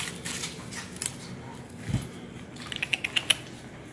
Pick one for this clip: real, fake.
real